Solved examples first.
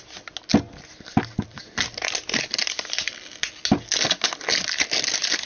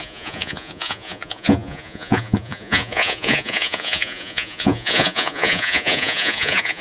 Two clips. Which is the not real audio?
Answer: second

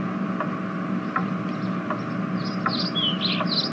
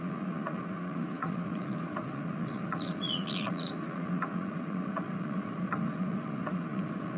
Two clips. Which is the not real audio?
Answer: second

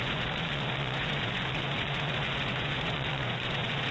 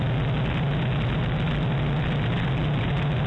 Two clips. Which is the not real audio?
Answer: first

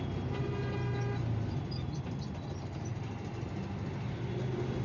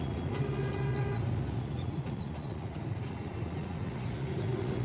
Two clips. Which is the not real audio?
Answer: second